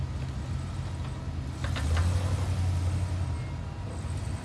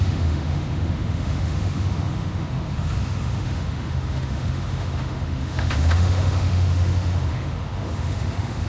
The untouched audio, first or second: first